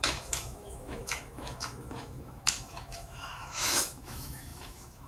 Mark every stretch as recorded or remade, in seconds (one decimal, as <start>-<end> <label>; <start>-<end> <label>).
0.0-5.1 remade